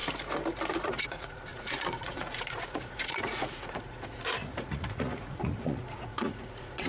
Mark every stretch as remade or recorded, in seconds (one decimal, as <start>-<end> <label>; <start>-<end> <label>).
0.0-0.7 recorded; 0.7-6.9 remade